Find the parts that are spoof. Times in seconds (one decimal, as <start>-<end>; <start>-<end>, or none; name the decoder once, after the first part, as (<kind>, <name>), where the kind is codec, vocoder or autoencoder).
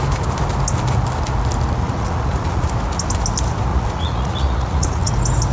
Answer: 1.8-2.7 (vocoder, Vocos); 3.7-5.1